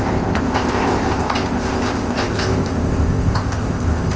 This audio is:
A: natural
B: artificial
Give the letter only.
B